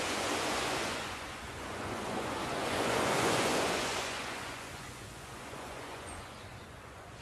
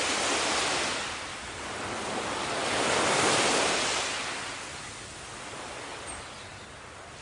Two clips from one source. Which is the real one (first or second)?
second